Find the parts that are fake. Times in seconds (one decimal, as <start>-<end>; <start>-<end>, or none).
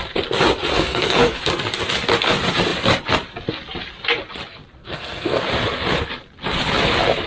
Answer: 0.7-1.4; 4.8-5.4